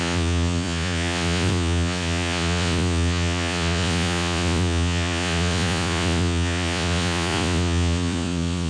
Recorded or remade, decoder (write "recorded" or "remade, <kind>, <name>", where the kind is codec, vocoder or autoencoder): remade, vocoder, Vocos